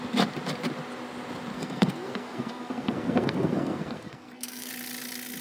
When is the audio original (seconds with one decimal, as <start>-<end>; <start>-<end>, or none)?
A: 0.0-1.5; 4.7-5.4